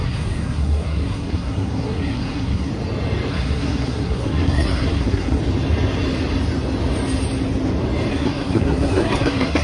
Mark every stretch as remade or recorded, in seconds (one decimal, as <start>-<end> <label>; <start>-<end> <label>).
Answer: 0.0-2.7 remade; 2.7-3.3 recorded; 3.3-5.4 remade; 5.4-8.1 recorded; 8.1-9.6 remade